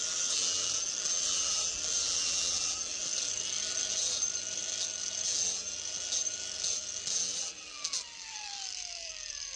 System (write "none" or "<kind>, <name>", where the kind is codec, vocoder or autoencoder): vocoder, BigVGAN v2